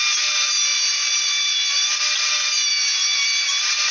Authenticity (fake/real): real